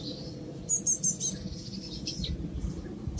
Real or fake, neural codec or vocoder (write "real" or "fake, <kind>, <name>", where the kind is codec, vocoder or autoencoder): real